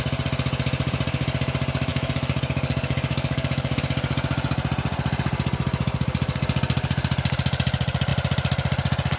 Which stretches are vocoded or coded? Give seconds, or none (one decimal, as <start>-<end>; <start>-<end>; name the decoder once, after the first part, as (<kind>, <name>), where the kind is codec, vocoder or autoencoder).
1.9-3.8 (codec, DAC)